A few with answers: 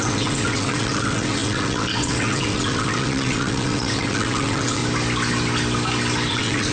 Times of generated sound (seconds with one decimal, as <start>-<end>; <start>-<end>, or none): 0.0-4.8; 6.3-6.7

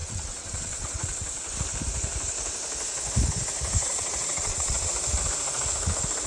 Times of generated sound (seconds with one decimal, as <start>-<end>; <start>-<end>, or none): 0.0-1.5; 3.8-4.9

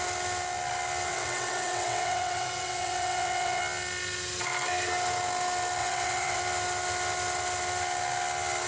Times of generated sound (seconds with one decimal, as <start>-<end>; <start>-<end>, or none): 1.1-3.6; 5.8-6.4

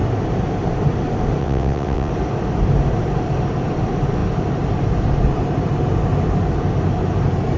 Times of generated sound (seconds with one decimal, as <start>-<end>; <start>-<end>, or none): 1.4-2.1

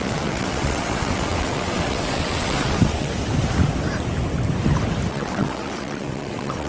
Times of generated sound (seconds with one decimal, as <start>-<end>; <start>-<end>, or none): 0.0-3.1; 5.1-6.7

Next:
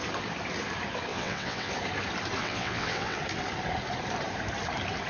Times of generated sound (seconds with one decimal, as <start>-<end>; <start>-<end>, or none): 1.1-1.7; 2.4-3.2

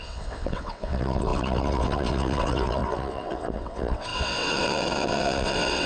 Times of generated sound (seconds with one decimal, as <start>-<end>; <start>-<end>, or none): 0.0-5.9